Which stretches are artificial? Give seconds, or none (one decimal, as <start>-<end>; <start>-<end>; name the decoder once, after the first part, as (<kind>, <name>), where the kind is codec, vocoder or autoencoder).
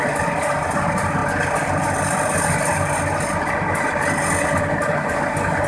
none